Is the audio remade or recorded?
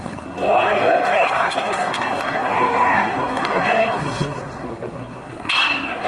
remade